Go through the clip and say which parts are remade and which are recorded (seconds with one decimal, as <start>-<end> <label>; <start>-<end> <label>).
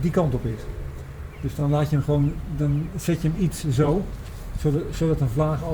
0.0-0.5 recorded; 0.5-1.1 remade; 1.1-1.6 recorded; 1.6-5.0 remade; 5.0-5.7 recorded